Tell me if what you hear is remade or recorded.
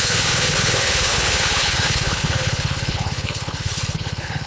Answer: remade